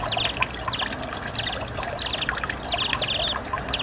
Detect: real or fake real